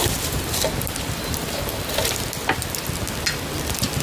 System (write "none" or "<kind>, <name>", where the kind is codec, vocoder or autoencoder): none